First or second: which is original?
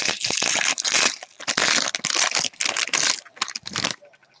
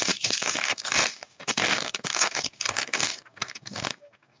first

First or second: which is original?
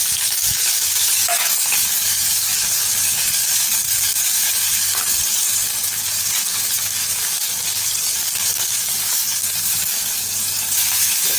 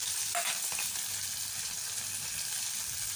second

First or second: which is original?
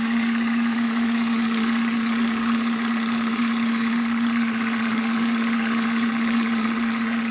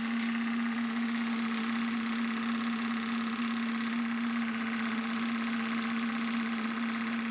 second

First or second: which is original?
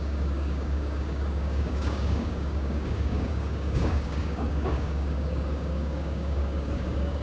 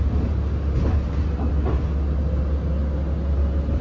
second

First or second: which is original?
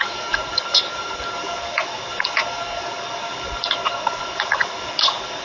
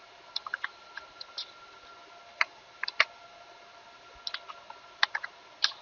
second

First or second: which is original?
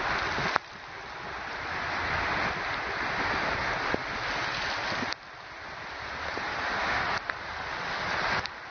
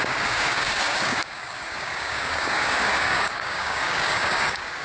first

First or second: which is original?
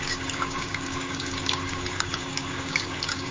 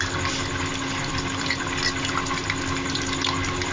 second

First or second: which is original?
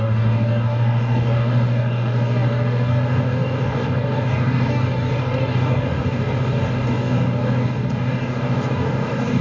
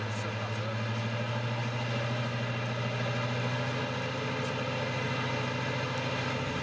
second